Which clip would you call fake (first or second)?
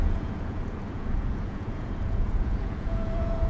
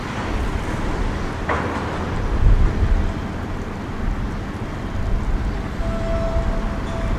first